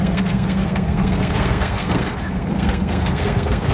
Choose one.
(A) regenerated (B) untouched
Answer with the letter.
A